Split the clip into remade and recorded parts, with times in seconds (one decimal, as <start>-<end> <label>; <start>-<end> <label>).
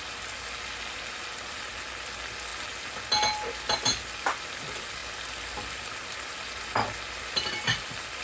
0.0-8.2 recorded